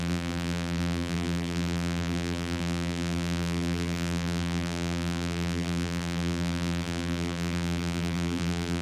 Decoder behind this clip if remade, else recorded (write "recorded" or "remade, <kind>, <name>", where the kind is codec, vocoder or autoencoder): remade, vocoder, BigVGAN v2